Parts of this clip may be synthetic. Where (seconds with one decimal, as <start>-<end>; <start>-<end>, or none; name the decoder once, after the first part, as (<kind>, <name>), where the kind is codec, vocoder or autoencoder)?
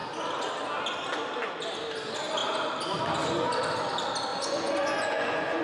4.3-5.6 (vocoder, Vocos)